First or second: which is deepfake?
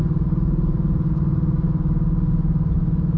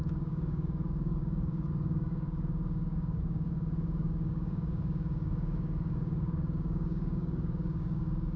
second